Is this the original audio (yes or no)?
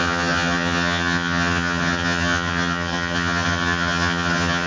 no